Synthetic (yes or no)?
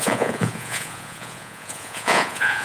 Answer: yes